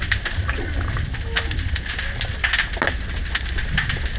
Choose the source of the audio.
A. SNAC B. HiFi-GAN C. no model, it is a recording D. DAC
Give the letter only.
C